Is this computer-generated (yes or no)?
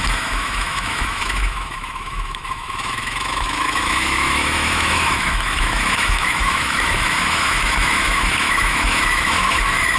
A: yes